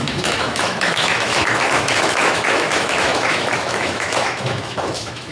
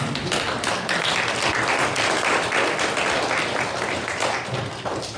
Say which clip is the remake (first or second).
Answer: first